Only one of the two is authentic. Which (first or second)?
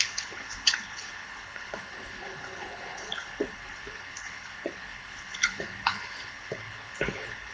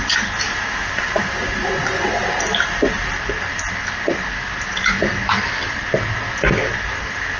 second